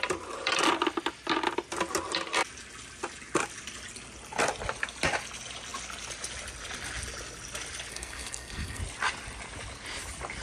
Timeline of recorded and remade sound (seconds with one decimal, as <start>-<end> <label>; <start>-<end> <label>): 0.0-7.9 recorded; 7.9-8.8 remade; 8.8-10.4 recorded